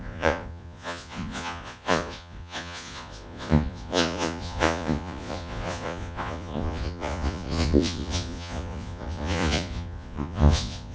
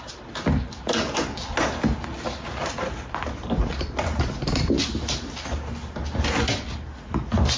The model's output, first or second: first